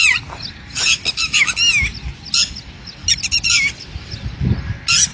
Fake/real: real